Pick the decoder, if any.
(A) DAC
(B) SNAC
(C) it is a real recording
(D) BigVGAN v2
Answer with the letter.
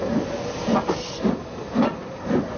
C